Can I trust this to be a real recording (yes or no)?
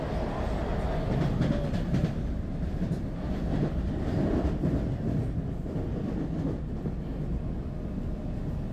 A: yes